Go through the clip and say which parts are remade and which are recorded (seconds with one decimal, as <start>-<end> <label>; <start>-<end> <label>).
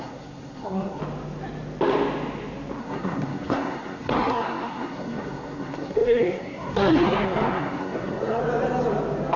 0.0-1.0 remade; 1.0-2.8 recorded; 2.8-8.4 remade; 8.4-9.4 recorded